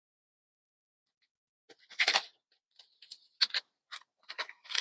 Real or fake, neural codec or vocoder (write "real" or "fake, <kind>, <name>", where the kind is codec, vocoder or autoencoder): real